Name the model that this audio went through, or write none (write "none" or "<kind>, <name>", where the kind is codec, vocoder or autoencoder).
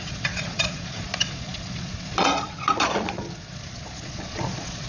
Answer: vocoder, Vocos